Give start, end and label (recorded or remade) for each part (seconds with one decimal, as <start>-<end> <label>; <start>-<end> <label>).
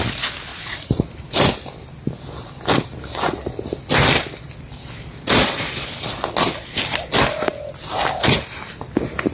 0.0-0.5 recorded; 0.5-1.0 remade; 1.0-9.3 recorded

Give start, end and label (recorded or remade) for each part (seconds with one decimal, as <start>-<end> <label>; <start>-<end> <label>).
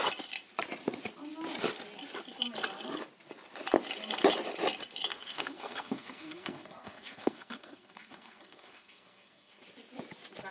0.0-5.1 recorded; 5.1-9.6 remade; 9.6-10.5 recorded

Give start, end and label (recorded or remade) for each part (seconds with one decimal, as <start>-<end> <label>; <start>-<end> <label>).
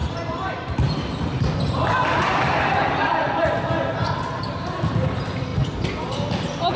0.0-3.4 remade; 3.4-6.8 recorded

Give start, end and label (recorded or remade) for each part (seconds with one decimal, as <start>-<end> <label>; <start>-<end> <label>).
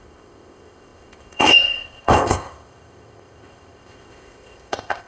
0.0-5.1 remade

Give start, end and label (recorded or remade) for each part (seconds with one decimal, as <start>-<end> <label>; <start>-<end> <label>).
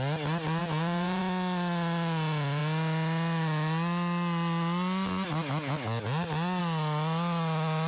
0.0-0.6 recorded; 0.6-1.2 remade; 1.2-7.9 recorded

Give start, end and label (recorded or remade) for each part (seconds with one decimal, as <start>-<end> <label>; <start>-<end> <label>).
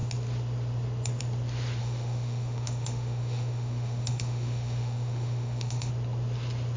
0.0-1.8 recorded; 1.8-5.9 remade; 5.9-6.8 recorded